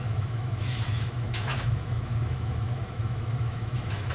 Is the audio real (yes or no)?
no